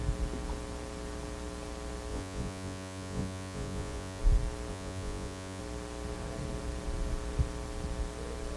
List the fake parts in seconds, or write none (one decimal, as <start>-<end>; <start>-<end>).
2.1-4.2; 4.7-5.6